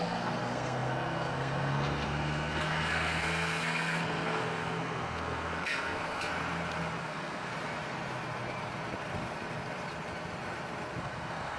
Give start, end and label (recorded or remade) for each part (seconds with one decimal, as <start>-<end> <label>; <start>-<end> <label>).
0.0-6.3 remade; 6.3-7.0 recorded; 7.0-7.5 remade; 7.5-11.0 recorded; 11.0-11.6 remade